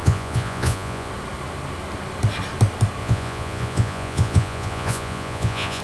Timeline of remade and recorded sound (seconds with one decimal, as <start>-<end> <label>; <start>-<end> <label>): 0.0-1.1 remade; 1.1-3.0 recorded; 3.0-5.8 remade